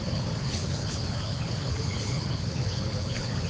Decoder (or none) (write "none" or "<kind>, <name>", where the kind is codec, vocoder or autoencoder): codec, HILCodec